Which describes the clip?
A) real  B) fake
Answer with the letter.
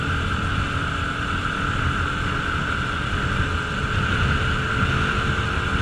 A